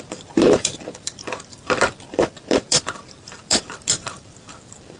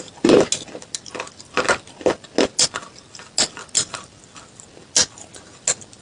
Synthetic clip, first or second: first